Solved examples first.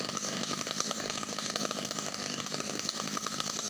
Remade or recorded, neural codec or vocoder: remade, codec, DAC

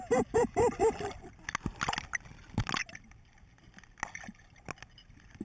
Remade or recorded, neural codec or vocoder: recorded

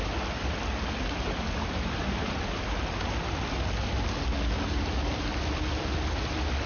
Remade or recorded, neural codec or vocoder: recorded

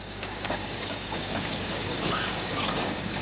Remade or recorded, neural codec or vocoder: remade, codec, DAC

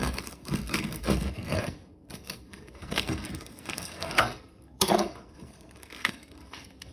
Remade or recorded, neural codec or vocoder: remade, codec, SNAC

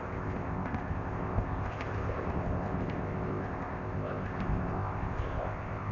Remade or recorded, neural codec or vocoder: remade, codec, ZipCodec